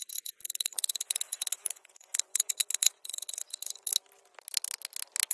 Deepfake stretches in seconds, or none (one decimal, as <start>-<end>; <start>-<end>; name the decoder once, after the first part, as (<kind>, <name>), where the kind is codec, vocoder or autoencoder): 0.0-3.9 (vocoder, Vocos)